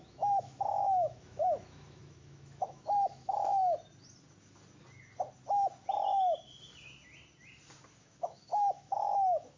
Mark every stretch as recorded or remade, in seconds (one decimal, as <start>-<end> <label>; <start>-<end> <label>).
0.0-3.6 remade; 3.6-8.0 recorded; 8.0-9.6 remade